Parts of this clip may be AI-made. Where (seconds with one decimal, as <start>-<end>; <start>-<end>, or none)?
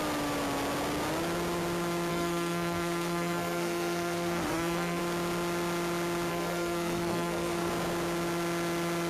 2.1-5.0; 6.3-7.7